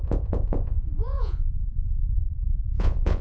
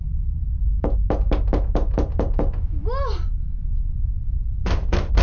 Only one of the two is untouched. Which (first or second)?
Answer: second